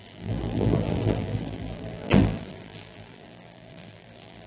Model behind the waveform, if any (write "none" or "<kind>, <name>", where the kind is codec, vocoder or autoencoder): vocoder, BigVGAN v2